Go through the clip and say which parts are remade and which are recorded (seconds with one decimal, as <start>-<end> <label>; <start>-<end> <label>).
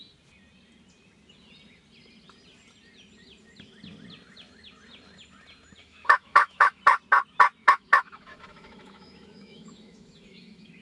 0.0-5.8 recorded; 5.8-6.8 remade; 6.8-7.6 recorded; 7.6-10.8 remade